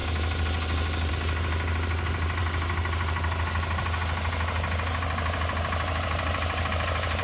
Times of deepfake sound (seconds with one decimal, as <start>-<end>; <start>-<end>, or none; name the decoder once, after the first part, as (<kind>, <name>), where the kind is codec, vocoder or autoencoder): none